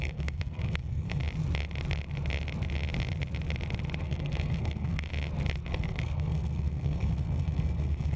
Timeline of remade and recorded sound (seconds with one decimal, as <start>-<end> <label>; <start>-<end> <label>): 0.0-1.2 remade; 1.2-4.0 recorded; 4.0-5.1 remade; 5.1-5.7 recorded; 5.7-8.2 remade